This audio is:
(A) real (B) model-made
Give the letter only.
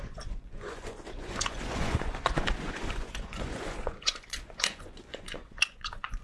B